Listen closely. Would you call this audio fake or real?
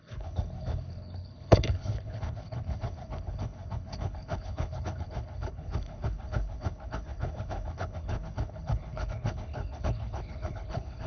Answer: fake